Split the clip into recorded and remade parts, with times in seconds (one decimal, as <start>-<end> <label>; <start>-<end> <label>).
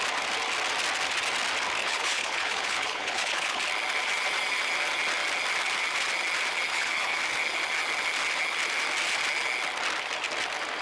0.0-1.8 recorded; 1.8-3.6 remade; 3.6-6.7 recorded; 6.7-7.2 remade; 7.2-10.8 recorded